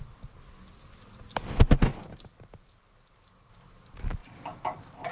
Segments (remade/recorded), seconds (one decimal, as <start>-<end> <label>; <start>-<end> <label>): 0.0-5.1 recorded